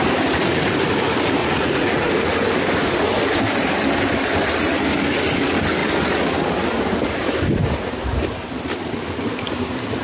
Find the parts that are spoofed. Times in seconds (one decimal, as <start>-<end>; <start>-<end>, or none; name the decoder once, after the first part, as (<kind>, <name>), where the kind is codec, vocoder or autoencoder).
1.4-2.2 (vocoder, Vocos)

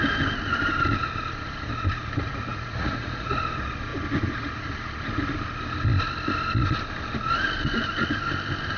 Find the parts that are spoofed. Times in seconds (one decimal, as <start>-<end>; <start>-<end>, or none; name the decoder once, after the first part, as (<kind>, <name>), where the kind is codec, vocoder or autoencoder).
2.5-3.3 (vocoder, Vocos)

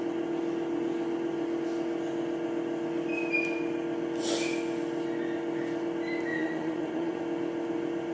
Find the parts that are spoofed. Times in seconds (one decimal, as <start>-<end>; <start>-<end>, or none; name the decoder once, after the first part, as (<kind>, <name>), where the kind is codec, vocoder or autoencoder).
6.3-7.2 (vocoder, Vocos)

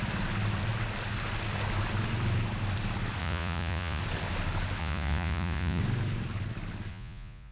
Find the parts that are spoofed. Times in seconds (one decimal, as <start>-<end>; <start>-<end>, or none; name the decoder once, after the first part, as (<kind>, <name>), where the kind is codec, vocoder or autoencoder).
3.2-4.0 (vocoder, Vocos); 4.8-5.8; 6.9-7.5

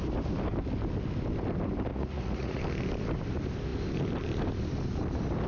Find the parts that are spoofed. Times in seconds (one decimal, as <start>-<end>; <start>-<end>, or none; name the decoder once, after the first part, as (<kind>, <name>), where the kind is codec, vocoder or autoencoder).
1.9-2.6 (vocoder, Vocos)

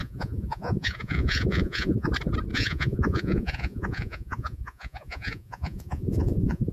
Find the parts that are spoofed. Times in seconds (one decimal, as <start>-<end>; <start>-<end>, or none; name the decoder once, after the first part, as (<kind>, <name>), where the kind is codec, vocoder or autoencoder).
0.0-2.1 (vocoder, Vocos); 2.5-6.7

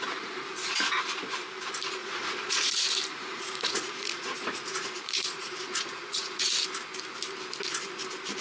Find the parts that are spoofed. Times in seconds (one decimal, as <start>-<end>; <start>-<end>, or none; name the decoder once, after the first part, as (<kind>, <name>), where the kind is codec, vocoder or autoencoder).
2.0-2.7 (vocoder, Vocos); 3.1-6.5

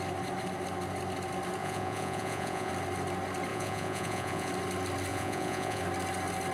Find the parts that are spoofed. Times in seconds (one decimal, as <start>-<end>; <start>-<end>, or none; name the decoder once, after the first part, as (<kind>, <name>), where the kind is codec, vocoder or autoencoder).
1.6-2.7 (vocoder, Vocos); 3.5-4.5; 5.1-5.8